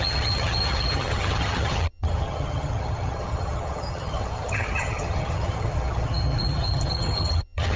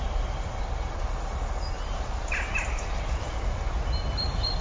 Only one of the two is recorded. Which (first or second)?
second